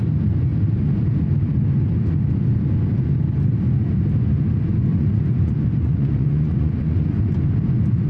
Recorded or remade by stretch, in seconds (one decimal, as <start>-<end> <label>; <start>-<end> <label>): 0.0-4.9 recorded; 4.9-7.3 remade; 7.3-8.1 recorded